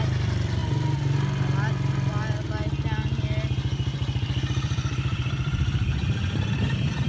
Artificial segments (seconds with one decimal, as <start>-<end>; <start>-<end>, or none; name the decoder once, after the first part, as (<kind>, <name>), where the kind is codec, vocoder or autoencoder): 0.0-0.6 (vocoder, BigVGAN v2); 3.2-7.1